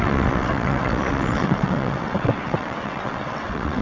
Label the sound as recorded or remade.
remade